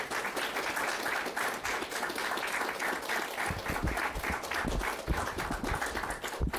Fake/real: real